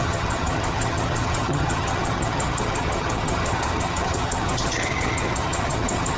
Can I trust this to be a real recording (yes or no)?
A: no